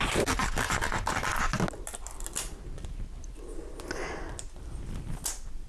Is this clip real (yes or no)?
yes